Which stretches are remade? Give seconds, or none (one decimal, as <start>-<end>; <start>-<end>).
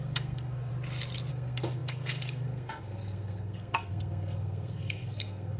0.0-0.7; 1.3-5.6